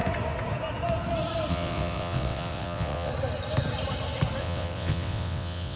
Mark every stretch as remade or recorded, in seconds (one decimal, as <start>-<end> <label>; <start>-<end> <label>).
0.0-1.5 recorded; 1.5-3.1 remade; 3.1-4.4 recorded; 4.4-5.8 remade